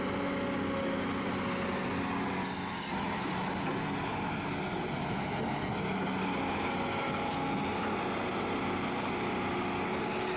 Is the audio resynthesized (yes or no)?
no